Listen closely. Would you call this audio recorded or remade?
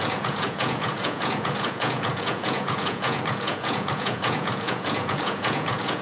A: remade